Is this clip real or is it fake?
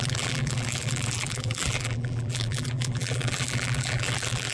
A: fake